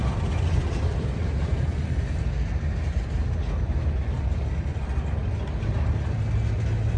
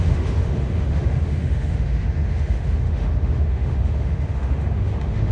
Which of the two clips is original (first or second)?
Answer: first